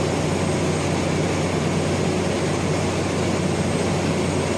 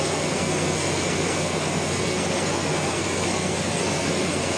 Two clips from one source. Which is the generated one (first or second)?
second